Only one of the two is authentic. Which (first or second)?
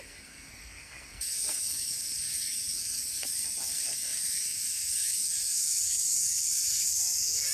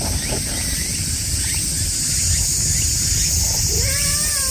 second